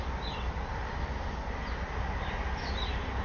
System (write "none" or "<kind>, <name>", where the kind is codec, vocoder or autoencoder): none